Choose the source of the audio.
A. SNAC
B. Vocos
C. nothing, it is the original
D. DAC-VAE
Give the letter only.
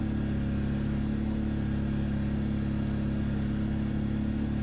C